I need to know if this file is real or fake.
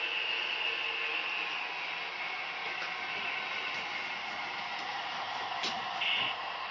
real